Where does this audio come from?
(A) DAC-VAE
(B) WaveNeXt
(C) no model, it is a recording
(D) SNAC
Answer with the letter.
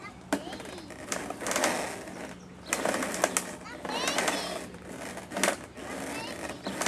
C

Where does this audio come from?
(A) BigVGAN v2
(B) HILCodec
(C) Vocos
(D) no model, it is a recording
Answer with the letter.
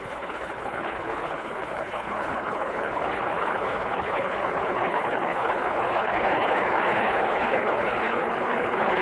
B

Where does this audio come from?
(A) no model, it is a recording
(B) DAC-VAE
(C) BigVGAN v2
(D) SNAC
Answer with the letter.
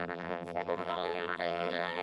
C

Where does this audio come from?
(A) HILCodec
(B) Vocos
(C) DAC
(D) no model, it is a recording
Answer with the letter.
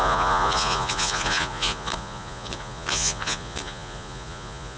B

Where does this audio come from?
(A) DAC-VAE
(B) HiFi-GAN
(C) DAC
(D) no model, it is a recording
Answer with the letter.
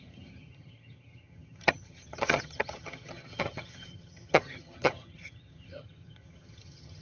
B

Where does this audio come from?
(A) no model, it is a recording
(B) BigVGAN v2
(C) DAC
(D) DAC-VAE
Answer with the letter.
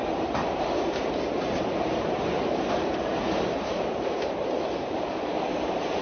B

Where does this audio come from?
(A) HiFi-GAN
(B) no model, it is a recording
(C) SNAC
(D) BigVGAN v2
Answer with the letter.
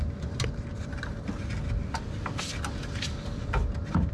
B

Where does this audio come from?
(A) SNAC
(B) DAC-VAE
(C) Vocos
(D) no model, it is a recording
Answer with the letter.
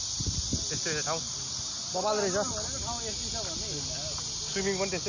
D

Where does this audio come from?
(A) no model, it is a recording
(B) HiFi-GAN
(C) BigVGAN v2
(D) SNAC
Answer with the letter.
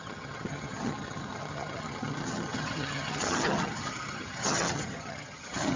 B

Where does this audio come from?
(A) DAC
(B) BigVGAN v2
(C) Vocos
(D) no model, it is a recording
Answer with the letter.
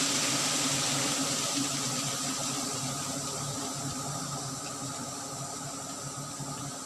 D